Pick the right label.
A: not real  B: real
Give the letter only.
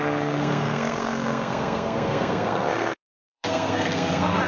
A